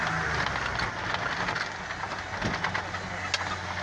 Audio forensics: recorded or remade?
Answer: recorded